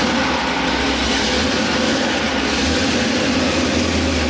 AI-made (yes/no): no